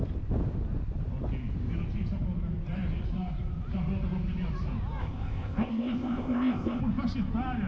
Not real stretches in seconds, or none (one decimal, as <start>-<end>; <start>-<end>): 5.0-6.8

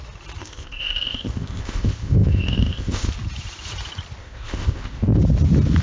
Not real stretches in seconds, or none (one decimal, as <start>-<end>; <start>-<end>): 0.4-3.1; 4.2-5.2

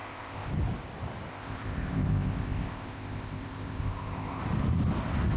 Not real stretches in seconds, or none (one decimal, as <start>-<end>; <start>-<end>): 0.0-0.5; 1.3-4.4

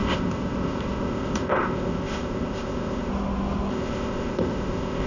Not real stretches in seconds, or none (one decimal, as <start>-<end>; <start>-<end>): 0.0-3.1; 3.7-5.1

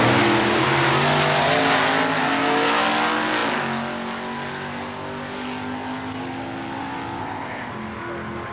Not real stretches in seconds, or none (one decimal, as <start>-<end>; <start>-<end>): 7.2-7.7